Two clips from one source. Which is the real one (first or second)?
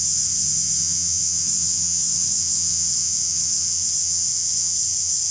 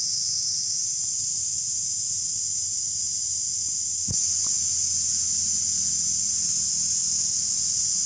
second